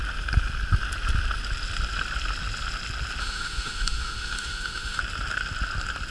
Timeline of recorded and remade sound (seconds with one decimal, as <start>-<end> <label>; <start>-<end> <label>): 0.0-3.2 recorded; 3.2-5.0 remade; 5.0-6.1 recorded